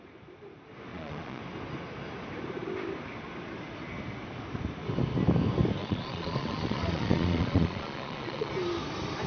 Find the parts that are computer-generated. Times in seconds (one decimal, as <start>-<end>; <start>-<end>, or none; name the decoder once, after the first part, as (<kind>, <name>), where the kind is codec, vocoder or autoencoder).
0.9-1.4 (vocoder, Vocos); 5.8-8.5